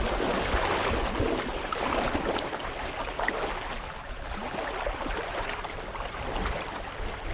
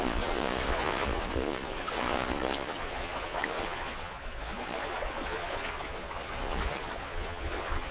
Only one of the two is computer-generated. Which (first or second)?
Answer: second